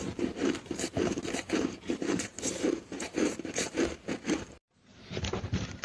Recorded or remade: remade